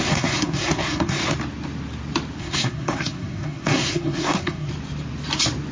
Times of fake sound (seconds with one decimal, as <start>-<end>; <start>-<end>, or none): 0.0-1.2; 2.4-4.7